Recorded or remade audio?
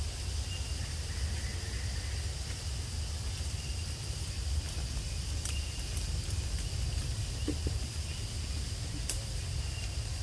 recorded